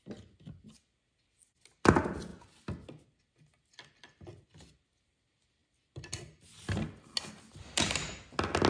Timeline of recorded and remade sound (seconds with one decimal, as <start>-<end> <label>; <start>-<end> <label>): 0.0-8.7 recorded